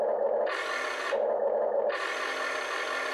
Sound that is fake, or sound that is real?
real